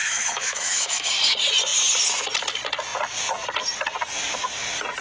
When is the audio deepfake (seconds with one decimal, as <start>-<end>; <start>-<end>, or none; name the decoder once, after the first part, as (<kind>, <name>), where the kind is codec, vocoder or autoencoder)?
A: 0.0-1.1 (autoencoder, DAC-VAE)